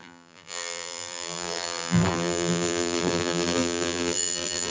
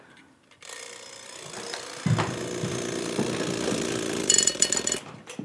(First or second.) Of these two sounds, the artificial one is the first